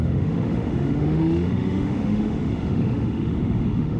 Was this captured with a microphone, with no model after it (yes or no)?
no